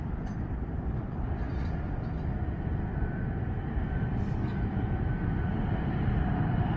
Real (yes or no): no